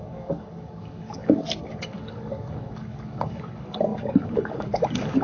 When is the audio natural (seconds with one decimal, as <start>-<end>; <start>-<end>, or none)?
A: none